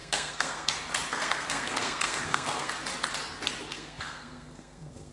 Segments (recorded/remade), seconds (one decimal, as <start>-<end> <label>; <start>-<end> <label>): 0.0-0.7 remade; 0.7-1.1 recorded; 1.1-2.7 remade; 2.7-3.7 recorded; 3.7-5.1 remade